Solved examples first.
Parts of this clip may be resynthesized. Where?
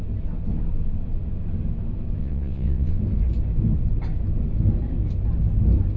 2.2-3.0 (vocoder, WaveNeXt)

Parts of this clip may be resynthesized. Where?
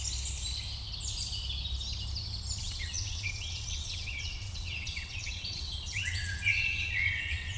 2.6-7.6 (vocoder, WaveNeXt)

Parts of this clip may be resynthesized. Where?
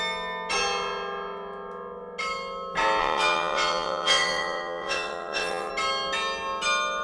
3.0-5.7 (vocoder, WaveNeXt)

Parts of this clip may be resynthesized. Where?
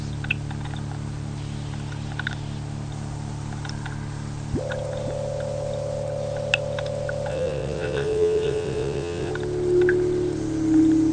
7.3-9.3 (vocoder, WaveNeXt)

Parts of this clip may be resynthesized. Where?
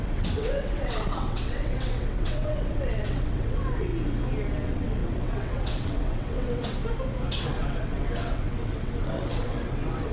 0.0-3.9 (vocoder, WaveNeXt); 4.5-6.8; 7.3-10.1